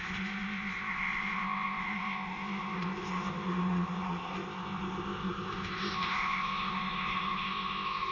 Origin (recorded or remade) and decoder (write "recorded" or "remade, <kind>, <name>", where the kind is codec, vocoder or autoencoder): remade, codec, ZipCodec